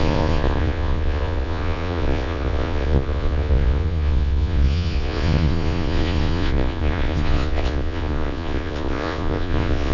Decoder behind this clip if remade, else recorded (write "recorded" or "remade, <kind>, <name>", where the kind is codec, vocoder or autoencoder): remade, vocoder, Vocos